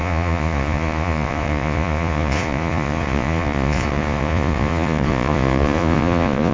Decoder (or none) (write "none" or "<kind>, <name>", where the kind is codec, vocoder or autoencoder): vocoder, Vocos